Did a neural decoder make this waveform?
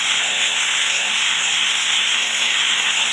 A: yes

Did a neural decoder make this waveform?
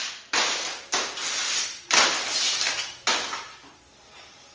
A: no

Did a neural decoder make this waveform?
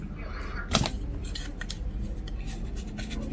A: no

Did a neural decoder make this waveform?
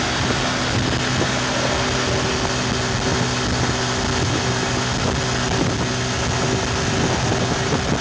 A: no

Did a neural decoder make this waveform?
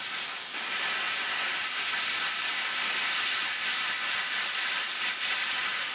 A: yes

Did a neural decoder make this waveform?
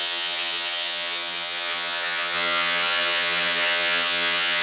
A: yes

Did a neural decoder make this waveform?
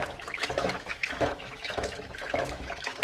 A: yes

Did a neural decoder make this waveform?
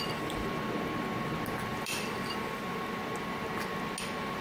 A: no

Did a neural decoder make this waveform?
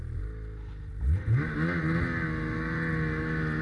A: no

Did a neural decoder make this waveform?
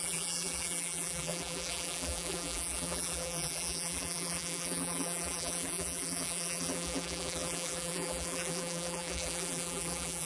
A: yes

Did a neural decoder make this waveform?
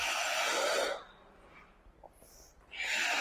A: no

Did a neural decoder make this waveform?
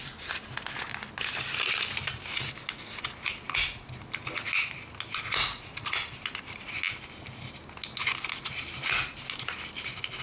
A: no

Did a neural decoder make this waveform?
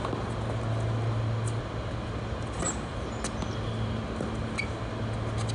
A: no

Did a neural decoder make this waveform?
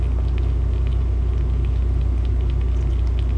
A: no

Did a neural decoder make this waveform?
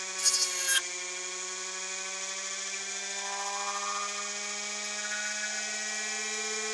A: no